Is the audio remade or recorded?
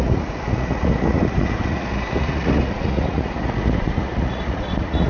remade